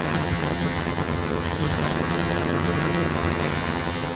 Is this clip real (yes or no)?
no